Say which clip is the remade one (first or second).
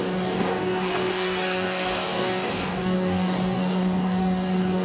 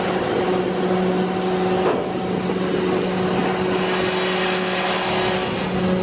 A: first